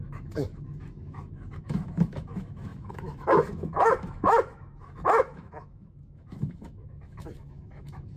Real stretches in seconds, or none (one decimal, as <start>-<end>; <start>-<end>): none